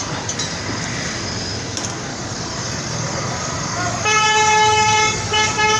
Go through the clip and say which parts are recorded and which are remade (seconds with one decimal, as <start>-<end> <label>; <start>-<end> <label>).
0.0-2.1 recorded; 2.1-5.8 remade